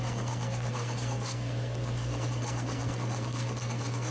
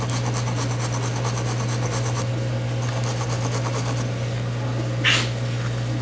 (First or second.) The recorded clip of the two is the second